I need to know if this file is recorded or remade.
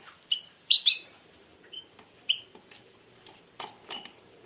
remade